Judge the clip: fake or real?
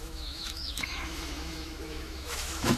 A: fake